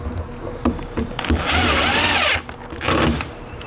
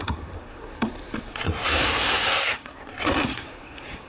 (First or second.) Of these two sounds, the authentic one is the first